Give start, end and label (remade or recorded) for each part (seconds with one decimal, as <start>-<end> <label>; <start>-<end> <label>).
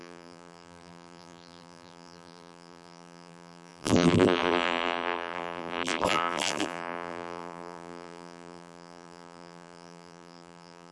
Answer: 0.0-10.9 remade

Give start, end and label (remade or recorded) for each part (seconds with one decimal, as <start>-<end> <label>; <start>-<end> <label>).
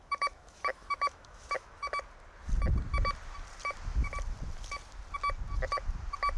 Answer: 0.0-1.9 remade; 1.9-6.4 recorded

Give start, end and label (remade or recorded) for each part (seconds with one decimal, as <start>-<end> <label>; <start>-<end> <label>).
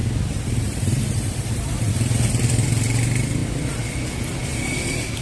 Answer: 0.0-1.9 remade; 1.9-5.2 recorded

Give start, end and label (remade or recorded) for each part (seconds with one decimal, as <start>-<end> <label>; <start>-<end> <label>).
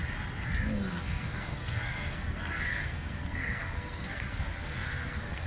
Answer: 0.0-0.9 recorded; 0.9-5.5 remade